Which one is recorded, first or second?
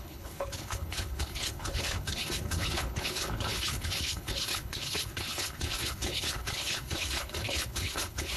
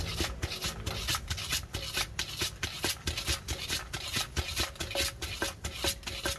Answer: second